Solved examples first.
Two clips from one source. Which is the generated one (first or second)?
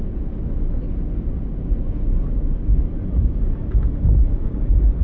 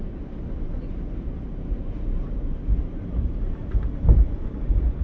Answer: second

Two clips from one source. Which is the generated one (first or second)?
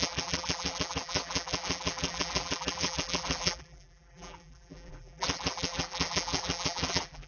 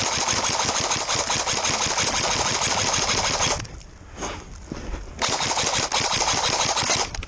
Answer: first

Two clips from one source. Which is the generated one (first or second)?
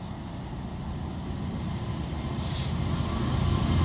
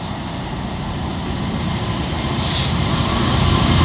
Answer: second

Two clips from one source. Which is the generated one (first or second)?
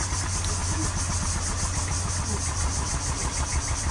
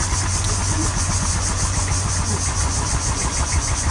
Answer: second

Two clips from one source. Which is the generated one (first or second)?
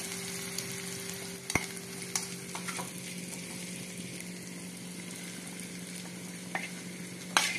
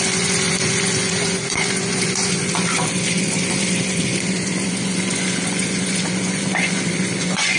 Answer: second